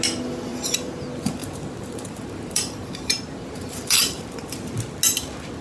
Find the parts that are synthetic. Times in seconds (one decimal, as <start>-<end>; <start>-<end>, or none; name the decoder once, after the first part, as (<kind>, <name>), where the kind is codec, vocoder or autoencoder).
0.5-1.0 (vocoder, BigVGAN v2); 1.4-4.5